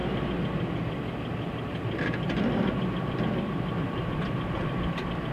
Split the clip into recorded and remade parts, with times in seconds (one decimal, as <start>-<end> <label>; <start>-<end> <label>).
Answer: 0.0-5.3 recorded